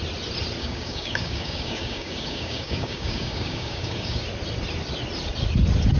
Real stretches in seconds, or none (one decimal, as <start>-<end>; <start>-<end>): 0.0-0.6; 4.2-6.0